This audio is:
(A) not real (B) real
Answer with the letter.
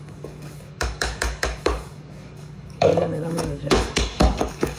A